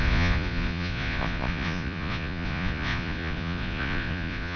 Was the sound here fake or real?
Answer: fake